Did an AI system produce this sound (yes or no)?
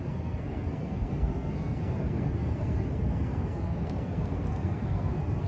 yes